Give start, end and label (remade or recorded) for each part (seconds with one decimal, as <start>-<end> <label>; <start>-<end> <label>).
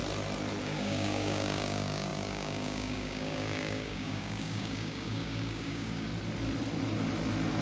0.0-0.6 recorded; 0.6-6.1 remade; 6.1-7.6 recorded